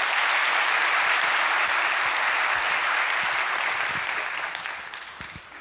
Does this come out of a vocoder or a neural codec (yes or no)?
no